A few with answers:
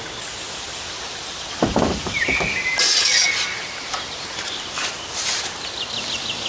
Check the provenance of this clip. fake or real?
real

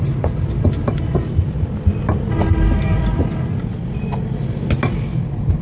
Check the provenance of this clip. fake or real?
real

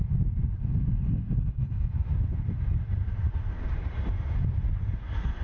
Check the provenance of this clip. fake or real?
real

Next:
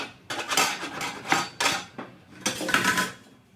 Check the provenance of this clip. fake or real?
real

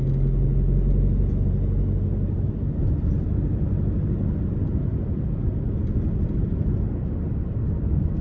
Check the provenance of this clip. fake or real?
real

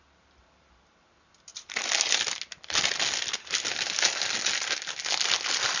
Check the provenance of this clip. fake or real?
real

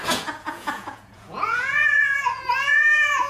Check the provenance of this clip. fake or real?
fake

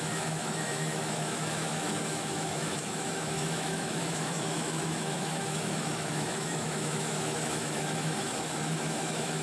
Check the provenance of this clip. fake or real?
fake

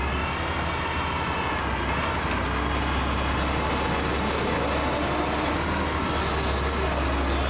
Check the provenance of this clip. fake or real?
real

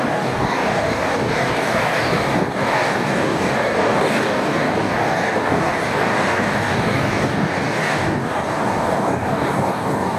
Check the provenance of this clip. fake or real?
fake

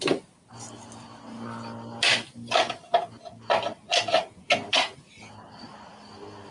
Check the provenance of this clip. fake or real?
real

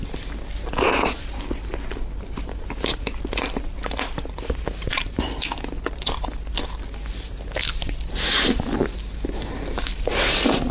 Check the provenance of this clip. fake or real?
real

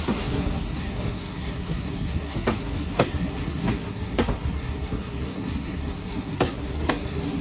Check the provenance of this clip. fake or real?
fake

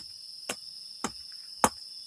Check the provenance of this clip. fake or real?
real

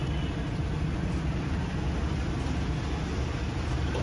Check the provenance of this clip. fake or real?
real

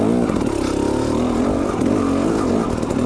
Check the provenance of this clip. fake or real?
real